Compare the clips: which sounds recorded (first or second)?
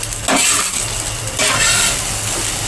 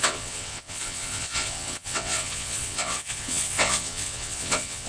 first